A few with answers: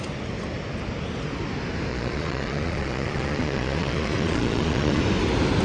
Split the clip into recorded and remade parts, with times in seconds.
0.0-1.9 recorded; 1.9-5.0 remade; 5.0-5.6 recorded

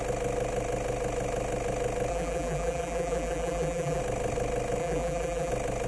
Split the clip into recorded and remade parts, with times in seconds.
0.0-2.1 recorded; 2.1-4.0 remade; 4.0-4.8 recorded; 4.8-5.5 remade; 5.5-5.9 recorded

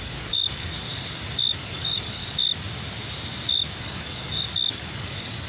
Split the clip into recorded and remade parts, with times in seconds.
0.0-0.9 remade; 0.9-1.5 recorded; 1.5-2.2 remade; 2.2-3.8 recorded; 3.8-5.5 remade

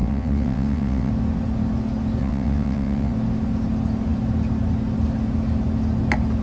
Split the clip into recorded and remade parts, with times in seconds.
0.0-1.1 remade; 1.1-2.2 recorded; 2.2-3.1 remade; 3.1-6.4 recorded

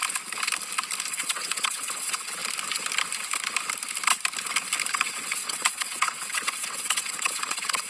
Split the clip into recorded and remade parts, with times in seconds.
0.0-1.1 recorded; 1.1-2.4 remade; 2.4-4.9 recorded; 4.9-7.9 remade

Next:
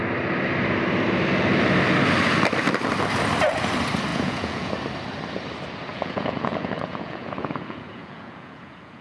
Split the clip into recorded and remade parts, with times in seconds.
0.0-4.1 recorded; 4.1-4.7 remade; 4.7-5.9 recorded; 5.9-9.0 remade

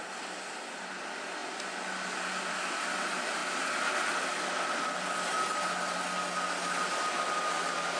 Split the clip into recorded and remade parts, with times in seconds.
0.0-8.0 recorded